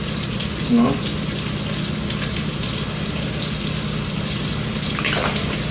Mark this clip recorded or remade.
recorded